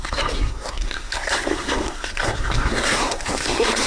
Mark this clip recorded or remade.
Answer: remade